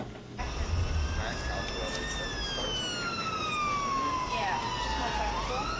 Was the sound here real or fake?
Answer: real